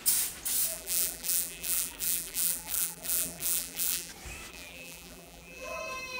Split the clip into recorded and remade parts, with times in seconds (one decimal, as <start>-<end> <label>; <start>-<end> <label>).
0.0-0.7 recorded; 0.7-4.1 remade; 4.1-4.5 recorded; 4.5-5.8 remade; 5.8-6.2 recorded